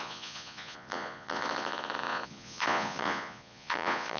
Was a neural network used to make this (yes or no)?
yes